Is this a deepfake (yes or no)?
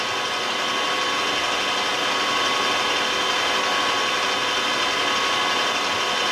no